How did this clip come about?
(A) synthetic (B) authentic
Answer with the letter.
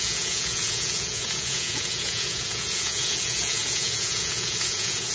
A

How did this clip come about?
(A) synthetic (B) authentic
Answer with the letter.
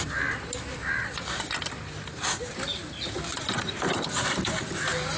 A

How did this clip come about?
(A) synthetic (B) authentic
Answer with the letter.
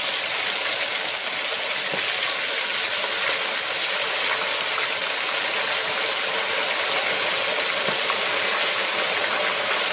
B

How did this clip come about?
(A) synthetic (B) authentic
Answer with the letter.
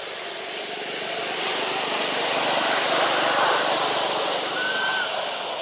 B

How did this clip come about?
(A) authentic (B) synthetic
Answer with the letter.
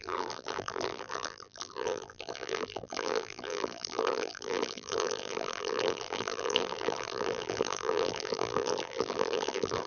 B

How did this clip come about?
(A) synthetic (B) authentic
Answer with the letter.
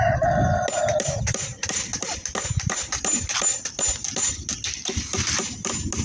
B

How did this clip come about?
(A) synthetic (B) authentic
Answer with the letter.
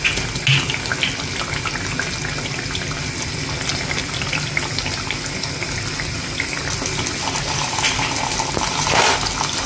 B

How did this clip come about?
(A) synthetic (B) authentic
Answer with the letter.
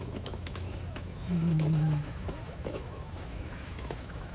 A